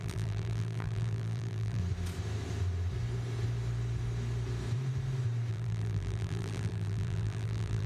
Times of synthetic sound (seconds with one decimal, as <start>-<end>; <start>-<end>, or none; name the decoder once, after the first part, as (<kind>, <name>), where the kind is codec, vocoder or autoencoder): 0.0-1.8 (vocoder, BigVGAN v2); 5.5-7.9